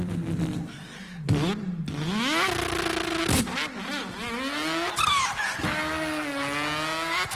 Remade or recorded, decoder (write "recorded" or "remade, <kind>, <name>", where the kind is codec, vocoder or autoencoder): recorded